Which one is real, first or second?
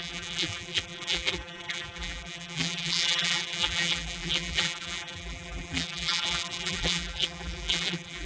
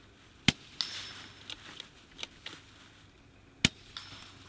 second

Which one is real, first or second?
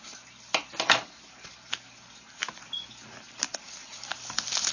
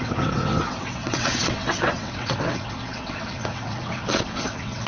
first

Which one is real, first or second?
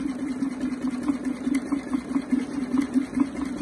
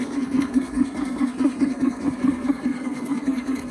first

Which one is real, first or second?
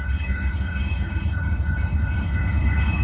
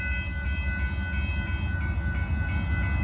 second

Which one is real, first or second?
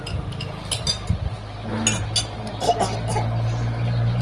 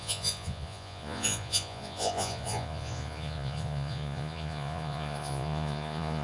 first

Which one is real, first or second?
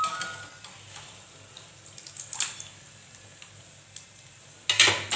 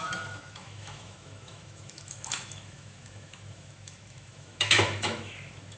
first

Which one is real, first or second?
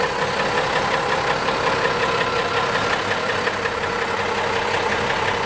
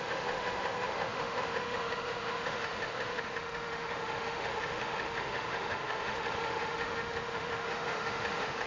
first